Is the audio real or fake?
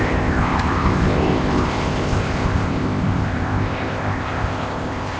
fake